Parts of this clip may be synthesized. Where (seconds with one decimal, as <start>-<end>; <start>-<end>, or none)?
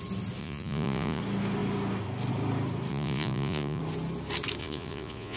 0.4-1.2; 2.9-3.8; 4.6-5.4